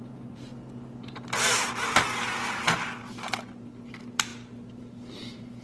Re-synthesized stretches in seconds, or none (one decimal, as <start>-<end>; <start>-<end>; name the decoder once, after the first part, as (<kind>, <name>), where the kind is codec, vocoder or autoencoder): 0.0-0.5 (vocoder, BigVGAN v2); 3.9-4.3; 4.8-5.6